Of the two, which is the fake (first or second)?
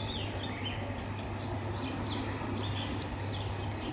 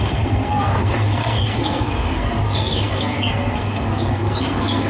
second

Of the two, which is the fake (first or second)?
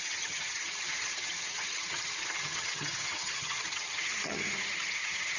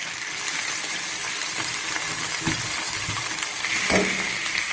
first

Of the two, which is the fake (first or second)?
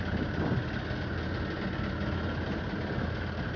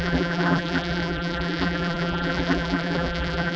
second